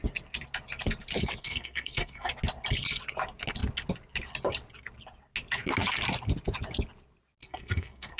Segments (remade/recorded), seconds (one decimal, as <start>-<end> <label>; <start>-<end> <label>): 0.0-1.4 recorded; 1.4-2.3 remade; 2.3-7.4 recorded; 7.4-8.2 remade